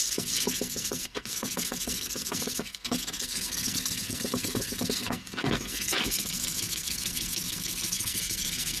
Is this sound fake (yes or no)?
yes